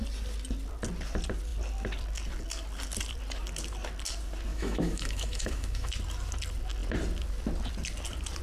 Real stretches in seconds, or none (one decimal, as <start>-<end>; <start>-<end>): 0.0-4.5; 5.9-8.4